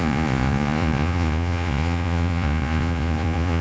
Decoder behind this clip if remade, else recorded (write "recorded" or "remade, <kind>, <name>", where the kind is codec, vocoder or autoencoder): remade, vocoder, Vocos